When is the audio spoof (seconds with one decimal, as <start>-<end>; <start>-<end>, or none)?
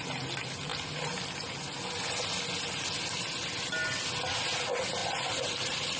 none